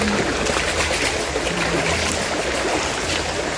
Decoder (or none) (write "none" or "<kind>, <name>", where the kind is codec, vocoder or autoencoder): none